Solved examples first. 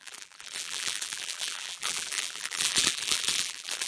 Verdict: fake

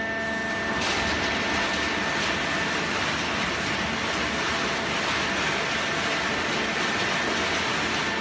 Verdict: real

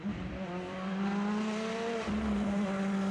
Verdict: fake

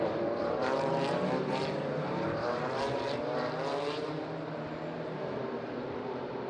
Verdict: fake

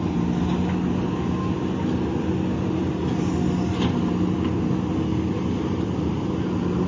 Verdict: real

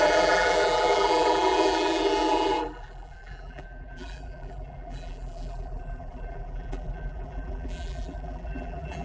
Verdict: fake